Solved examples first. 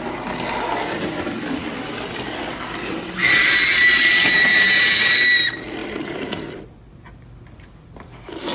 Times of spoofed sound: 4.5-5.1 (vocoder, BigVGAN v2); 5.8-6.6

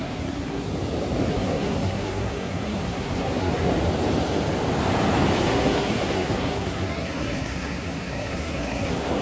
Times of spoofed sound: 0.0-0.7 (codec, SNAC); 1.3-3.7; 5.4-9.2

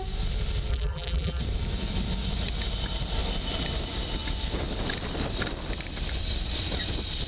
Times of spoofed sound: 0.7-1.4 (vocoder, BigVGAN v2)

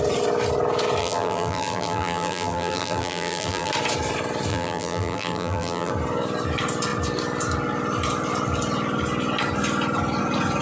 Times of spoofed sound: 1.0-3.7 (vocoder, BigVGAN v2); 4.5-5.9

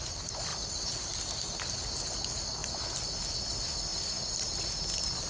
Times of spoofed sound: 0.5-1.3 (vocoder, BigVGAN v2); 3.9-4.6

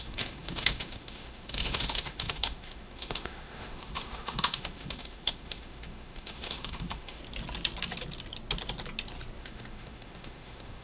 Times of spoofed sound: 0.0-7.2 (autoencoder, DAC-VAE); 9.4-10.8

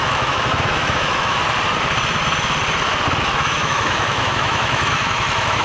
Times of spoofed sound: 0.0-1.4 (autoencoder, DAC-VAE); 3.2-5.6